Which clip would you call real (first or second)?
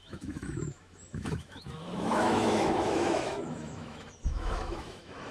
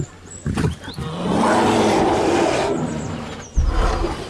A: second